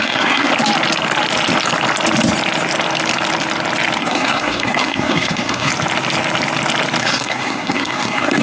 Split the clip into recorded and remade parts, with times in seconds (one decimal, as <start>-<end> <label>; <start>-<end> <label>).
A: 0.0-0.5 remade; 0.5-4.0 recorded; 4.0-5.7 remade; 5.7-7.0 recorded; 7.0-8.4 remade